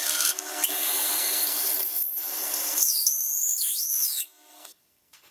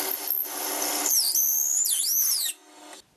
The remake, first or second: first